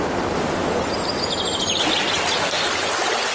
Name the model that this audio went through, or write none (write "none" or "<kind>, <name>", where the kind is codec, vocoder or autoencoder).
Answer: none